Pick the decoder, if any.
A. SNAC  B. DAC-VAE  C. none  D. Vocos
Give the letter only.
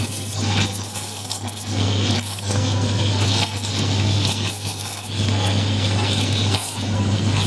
A